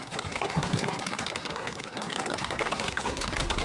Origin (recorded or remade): remade